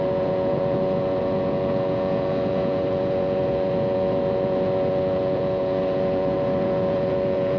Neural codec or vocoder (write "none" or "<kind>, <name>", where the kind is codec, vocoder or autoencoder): vocoder, Vocos